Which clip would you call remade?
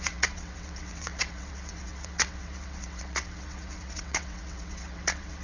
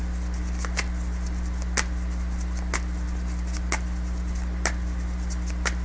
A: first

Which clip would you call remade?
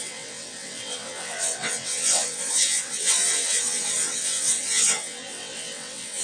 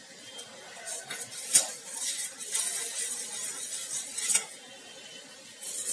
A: first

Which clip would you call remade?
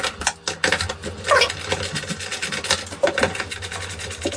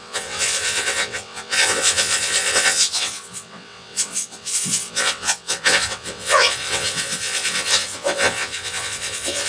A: second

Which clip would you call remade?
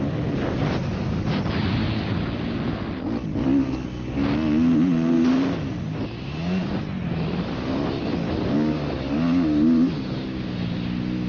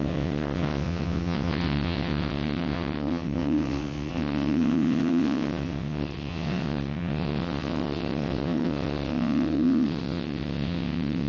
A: second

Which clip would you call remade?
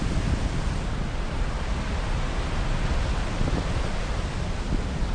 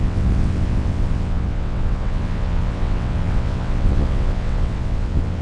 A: second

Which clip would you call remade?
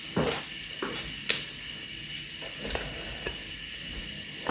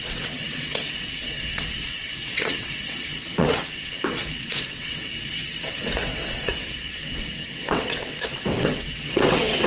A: second